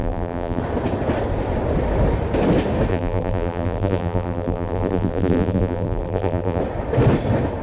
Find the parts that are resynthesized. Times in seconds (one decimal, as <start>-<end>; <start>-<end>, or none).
0.0-0.6; 2.9-6.6